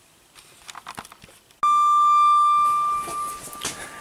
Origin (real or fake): real